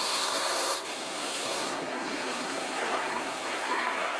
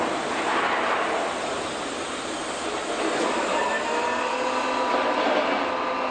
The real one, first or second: second